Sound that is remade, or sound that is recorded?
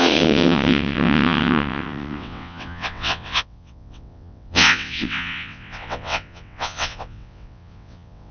remade